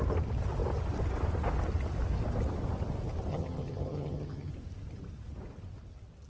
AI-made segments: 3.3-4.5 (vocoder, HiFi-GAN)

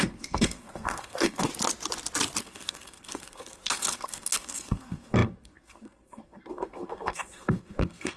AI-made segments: 0.0-1.5 (codec, SNAC); 2.4-8.2

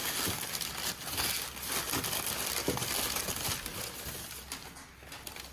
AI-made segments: none

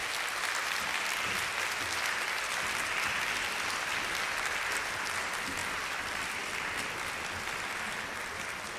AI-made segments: 0.0-0.8 (vocoder, BigVGAN v2); 5.6-7.8

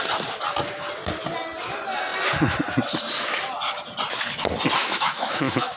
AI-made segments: 4.8-5.8 (autoencoder, DAC-VAE)

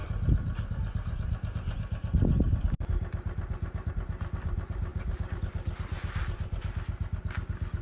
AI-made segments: none

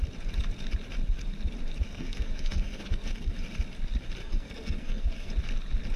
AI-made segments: 1.9-3.4 (codec, SNAC); 4.2-5.3